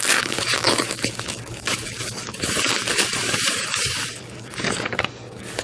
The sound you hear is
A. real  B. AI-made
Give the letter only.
B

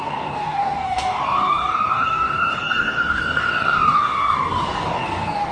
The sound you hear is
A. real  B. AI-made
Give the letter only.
B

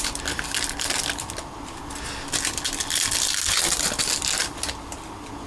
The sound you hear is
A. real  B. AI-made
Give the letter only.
A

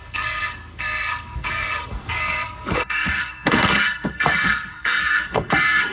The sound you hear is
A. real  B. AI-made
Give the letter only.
B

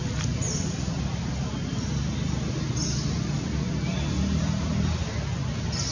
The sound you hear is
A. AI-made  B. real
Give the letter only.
B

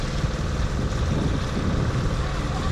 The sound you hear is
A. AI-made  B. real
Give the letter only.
B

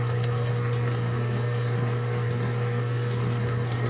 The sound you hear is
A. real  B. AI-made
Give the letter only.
B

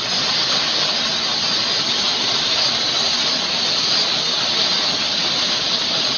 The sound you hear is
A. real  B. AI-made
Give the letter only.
A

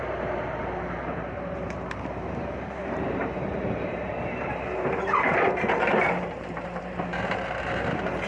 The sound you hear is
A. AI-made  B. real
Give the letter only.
A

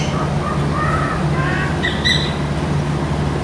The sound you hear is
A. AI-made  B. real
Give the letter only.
B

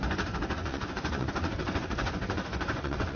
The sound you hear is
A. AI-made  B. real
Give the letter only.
A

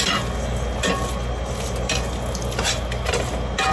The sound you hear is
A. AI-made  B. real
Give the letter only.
B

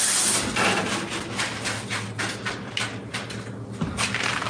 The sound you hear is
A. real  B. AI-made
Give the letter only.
A